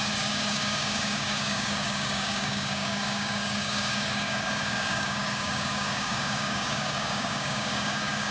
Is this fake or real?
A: fake